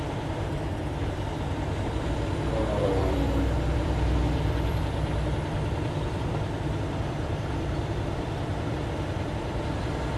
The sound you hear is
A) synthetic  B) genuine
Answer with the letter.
A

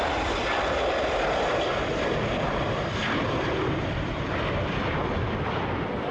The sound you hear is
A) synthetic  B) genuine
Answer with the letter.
A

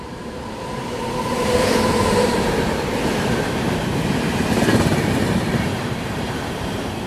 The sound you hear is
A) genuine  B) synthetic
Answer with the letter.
B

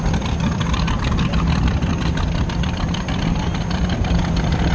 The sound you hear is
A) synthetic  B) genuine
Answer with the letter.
A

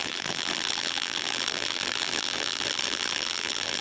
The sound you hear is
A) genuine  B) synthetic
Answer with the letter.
B